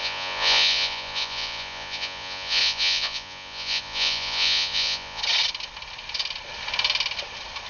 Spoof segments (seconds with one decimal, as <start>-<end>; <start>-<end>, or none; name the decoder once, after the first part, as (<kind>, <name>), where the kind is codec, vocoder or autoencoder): 0.0-5.2 (vocoder, Vocos)